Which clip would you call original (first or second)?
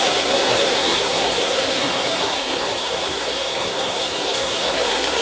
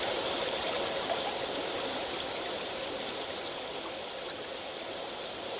second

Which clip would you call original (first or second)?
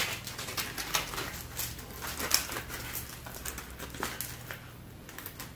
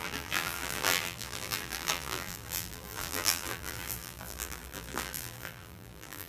first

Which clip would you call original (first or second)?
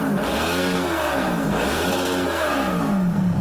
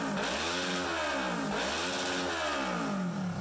second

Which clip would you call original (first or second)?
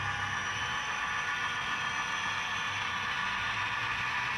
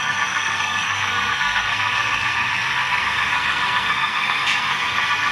first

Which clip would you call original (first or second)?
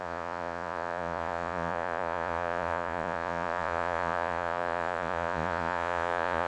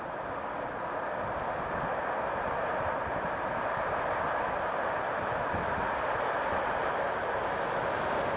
second